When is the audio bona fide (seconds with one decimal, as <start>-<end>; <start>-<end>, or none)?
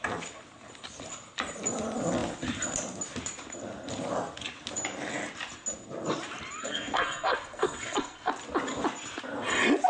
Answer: 0.0-6.6; 8.3-9.9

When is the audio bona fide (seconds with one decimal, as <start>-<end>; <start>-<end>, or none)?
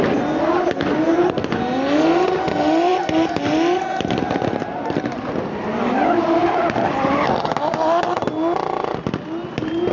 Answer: 0.0-9.9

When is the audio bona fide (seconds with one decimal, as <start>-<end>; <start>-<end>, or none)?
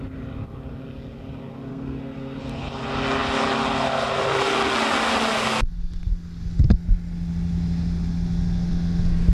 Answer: 0.0-1.7; 2.4-9.3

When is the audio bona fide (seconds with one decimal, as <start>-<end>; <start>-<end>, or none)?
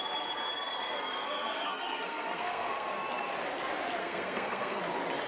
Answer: 0.0-1.2; 2.9-4.0; 4.8-5.3